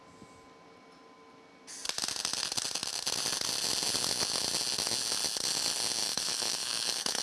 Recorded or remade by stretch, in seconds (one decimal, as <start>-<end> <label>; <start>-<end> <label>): 0.0-6.0 recorded; 6.0-7.2 remade